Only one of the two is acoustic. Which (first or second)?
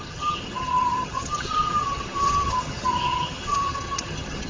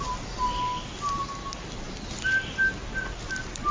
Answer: second